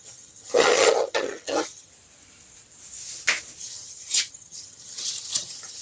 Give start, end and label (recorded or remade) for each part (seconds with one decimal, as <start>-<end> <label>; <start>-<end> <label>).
0.0-1.9 remade; 1.9-3.6 recorded; 3.6-5.8 remade